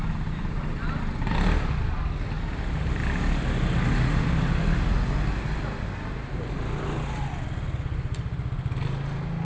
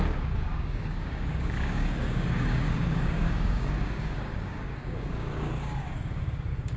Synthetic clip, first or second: second